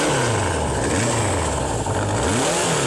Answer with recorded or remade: recorded